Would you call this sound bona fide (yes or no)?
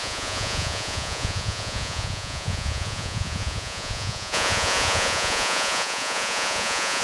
no